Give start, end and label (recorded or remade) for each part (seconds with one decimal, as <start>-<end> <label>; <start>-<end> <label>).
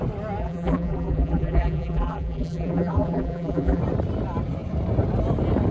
0.0-0.4 recorded; 0.4-3.8 remade; 3.8-5.7 recorded